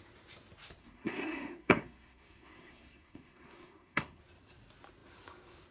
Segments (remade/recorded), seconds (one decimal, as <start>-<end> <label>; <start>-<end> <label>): 0.0-0.8 recorded; 0.8-4.2 remade; 4.2-5.7 recorded

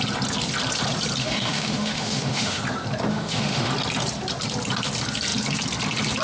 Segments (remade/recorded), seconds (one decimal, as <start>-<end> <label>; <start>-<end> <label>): 0.0-1.2 recorded; 1.2-2.6 remade; 2.6-3.1 recorded; 3.1-3.7 remade; 3.7-6.2 recorded

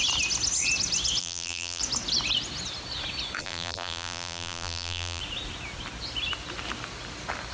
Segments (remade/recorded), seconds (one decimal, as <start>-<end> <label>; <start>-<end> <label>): 0.0-1.2 recorded; 1.2-1.8 remade; 1.8-3.4 recorded; 3.4-5.2 remade; 5.2-7.5 recorded